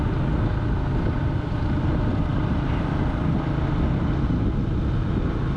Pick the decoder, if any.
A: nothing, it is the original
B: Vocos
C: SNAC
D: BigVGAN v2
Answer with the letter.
A